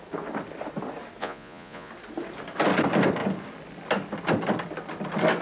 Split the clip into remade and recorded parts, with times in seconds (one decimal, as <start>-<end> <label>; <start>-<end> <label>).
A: 0.0-1.2 recorded; 1.2-1.9 remade; 1.9-5.4 recorded